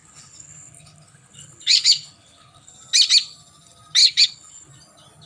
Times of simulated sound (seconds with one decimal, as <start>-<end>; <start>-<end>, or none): 0.0-2.7; 4.0-4.7